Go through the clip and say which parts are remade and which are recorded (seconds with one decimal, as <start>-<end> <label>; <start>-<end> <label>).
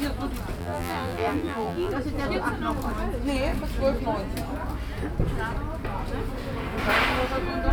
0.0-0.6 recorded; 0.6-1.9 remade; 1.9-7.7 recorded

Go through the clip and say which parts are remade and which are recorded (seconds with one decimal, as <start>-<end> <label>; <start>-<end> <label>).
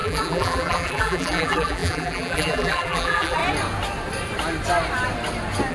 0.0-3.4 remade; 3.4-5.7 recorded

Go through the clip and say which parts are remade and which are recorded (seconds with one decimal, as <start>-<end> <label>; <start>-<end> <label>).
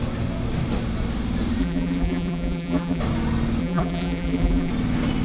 0.0-1.6 recorded; 1.6-3.0 remade; 3.0-3.6 recorded; 3.6-4.7 remade; 4.7-5.2 recorded